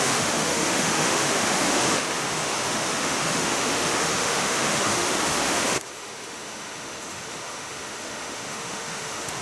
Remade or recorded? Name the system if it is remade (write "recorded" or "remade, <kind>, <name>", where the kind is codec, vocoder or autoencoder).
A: remade, autoencoder, DAC-VAE